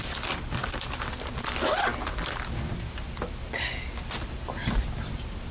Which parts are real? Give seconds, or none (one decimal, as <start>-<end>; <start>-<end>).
0.6-1.3